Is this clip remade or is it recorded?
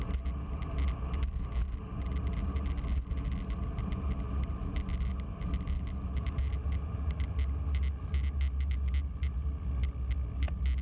recorded